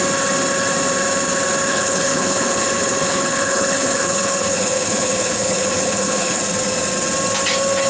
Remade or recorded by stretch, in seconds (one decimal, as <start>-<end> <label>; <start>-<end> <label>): 0.0-1.7 recorded; 1.7-6.4 remade; 6.4-7.9 recorded